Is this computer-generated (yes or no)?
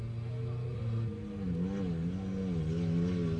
no